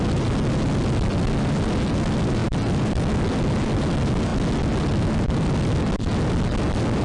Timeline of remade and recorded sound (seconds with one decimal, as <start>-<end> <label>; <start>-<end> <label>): 0.0-7.0 recorded